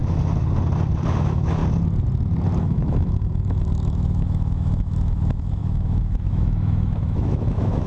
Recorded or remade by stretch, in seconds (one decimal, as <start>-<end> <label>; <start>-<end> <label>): 0.0-1.2 recorded; 1.2-1.6 remade; 1.6-2.6 recorded; 2.6-7.9 remade